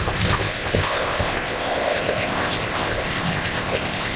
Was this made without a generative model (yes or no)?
no